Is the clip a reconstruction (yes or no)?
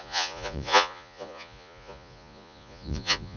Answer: yes